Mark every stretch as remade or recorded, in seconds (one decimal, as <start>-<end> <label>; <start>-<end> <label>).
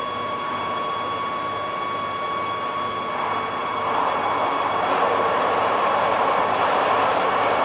0.0-3.6 recorded; 3.6-6.1 remade; 6.1-7.6 recorded